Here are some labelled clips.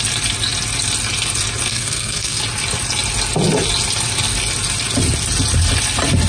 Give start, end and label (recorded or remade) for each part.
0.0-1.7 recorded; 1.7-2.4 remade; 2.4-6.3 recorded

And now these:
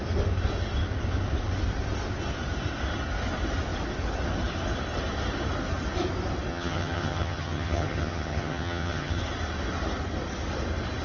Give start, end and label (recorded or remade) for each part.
0.0-6.5 recorded; 6.5-9.2 remade; 9.2-11.0 recorded

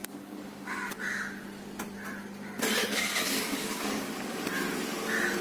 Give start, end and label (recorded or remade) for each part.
0.0-0.9 remade; 0.9-2.8 recorded; 2.8-4.4 remade; 4.4-5.4 recorded

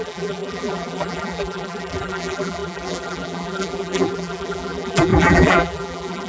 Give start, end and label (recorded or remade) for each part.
0.0-6.3 remade

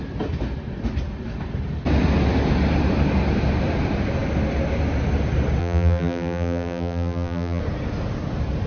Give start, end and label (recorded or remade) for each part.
0.0-5.6 recorded; 5.6-7.6 remade; 7.6-8.7 recorded

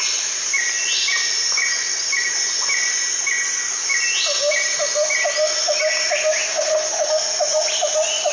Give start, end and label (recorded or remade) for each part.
0.0-6.5 recorded; 6.5-7.1 remade; 7.1-8.3 recorded

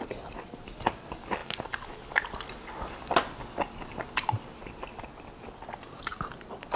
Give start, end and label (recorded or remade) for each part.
0.0-6.8 recorded